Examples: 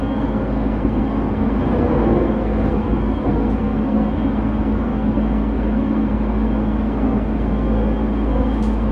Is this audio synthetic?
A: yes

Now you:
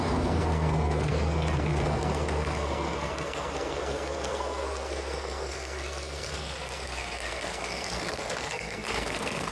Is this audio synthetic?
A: yes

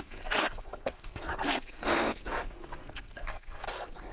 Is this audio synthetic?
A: yes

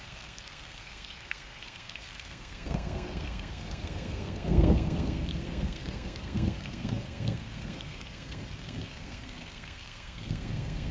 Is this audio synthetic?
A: yes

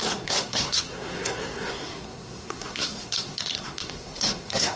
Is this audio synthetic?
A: yes